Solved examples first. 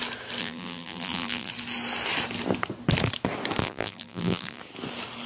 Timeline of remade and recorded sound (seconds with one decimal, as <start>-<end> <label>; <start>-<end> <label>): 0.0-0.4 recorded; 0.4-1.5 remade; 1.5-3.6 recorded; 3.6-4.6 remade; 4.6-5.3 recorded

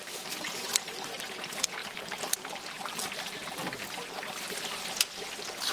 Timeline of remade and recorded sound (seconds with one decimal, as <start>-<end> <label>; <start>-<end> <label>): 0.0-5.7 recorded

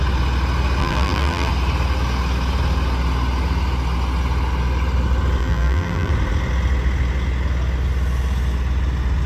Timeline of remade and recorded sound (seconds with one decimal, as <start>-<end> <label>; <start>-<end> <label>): 0.0-0.8 recorded; 0.8-1.5 remade; 1.5-5.4 recorded; 5.4-6.1 remade; 6.1-9.3 recorded

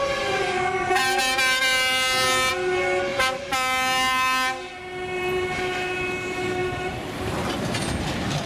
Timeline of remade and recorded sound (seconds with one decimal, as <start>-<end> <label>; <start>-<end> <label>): 0.0-2.5 remade; 2.5-3.1 recorded; 3.1-4.8 remade; 4.8-6.6 recorded; 6.6-8.0 remade; 8.0-8.5 recorded

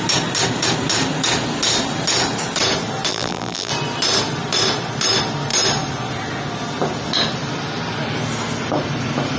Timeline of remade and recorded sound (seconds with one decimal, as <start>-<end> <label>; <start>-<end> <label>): 0.0-3.1 recorded; 3.1-3.7 remade; 3.7-9.4 recorded

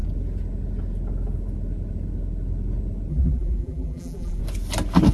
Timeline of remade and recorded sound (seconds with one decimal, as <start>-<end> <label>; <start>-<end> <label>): 0.0-3.1 recorded; 3.1-4.4 remade; 4.4-5.1 recorded

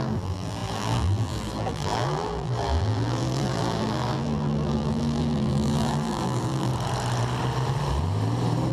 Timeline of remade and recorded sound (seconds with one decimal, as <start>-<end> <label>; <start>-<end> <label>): 0.0-6.7 remade; 6.7-8.7 recorded